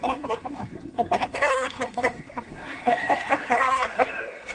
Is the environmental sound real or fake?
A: fake